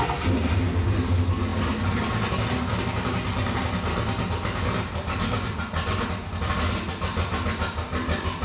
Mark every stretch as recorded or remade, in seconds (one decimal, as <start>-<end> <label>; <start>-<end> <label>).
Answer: 0.0-8.4 recorded